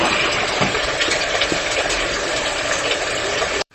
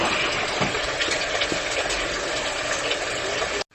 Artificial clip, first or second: first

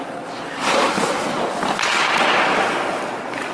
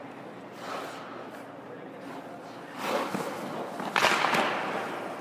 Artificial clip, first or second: first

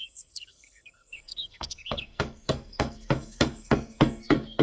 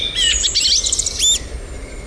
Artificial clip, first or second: first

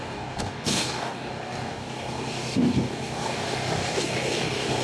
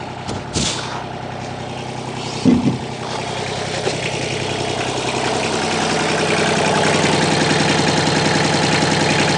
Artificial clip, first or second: first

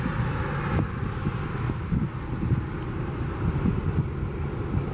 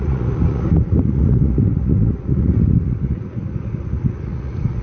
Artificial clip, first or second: second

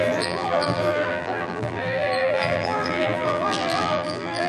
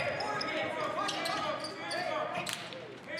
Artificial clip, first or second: first